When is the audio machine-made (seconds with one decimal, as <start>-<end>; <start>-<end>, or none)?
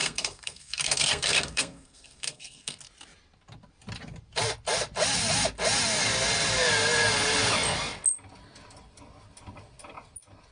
0.0-2.8